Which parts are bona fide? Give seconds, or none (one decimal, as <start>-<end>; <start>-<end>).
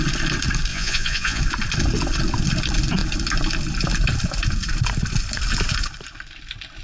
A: 0.0-0.7; 1.4-6.8